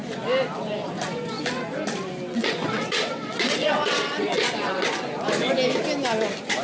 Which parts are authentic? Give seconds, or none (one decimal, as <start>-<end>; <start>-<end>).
0.0-2.3; 4.9-6.6